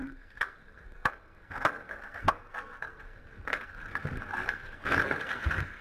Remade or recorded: remade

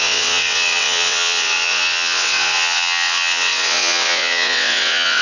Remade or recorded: remade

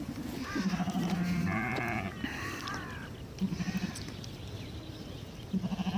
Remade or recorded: recorded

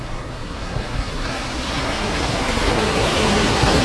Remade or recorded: remade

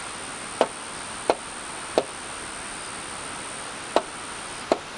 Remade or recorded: recorded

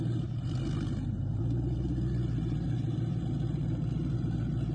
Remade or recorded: recorded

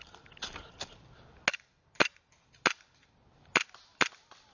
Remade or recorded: recorded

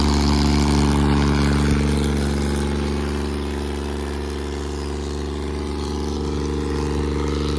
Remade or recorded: recorded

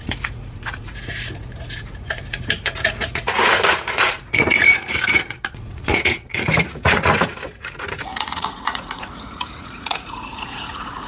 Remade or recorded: remade